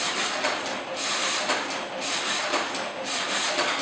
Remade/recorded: recorded